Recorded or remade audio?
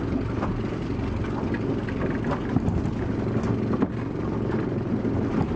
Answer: recorded